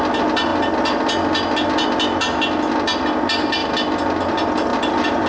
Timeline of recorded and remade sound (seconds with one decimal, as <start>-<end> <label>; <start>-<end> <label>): 0.0-4.7 recorded; 4.7-5.3 remade